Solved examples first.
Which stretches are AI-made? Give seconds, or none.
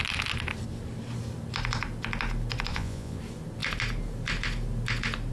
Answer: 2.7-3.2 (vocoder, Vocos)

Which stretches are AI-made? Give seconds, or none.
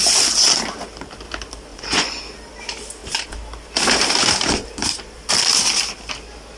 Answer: 1.7-2.2 (vocoder, Vocos)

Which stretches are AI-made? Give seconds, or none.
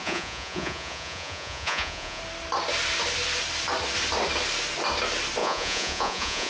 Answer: 0.0-2.2 (vocoder, Vocos); 5.4-6.5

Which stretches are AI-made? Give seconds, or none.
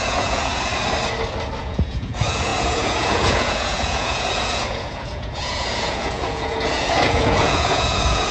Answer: 0.0-0.7 (vocoder, Vocos); 1.6-8.3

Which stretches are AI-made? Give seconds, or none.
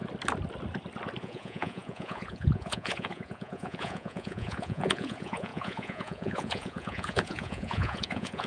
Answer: 1.2-8.5 (vocoder, Vocos)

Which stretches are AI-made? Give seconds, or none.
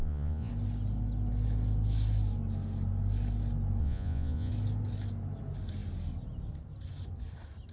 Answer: 0.0-0.5 (vocoder, Vocos); 3.8-4.5